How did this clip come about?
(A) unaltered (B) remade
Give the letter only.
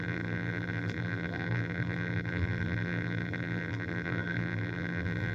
B